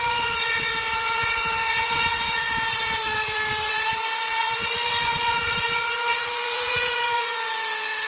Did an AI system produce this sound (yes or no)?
yes